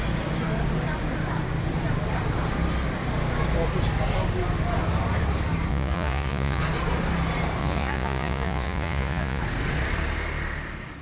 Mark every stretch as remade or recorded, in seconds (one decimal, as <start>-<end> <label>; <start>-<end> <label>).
0.0-5.7 recorded; 5.7-6.6 remade; 6.6-7.6 recorded; 7.6-9.4 remade; 9.4-11.0 recorded